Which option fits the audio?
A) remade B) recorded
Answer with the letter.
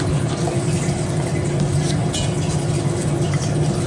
B